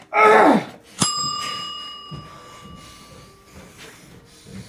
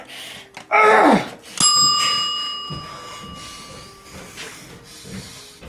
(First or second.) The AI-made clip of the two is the first